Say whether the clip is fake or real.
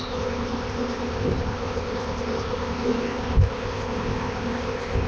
fake